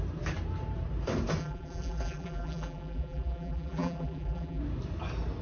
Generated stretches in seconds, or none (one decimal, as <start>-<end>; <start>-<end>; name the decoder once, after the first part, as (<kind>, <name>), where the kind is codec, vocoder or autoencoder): 1.4-4.6 (vocoder, BigVGAN v2)